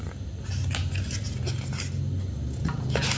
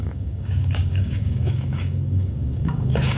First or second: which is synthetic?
second